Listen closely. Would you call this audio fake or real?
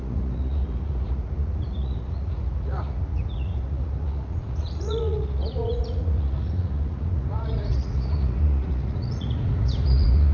fake